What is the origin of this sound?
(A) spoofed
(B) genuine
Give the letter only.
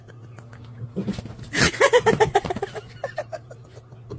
B